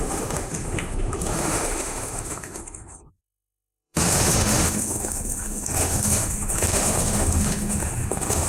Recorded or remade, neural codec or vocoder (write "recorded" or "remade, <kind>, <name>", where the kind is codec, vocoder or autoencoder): remade, autoencoder, DAC-VAE